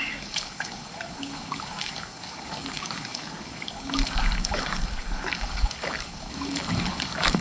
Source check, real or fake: fake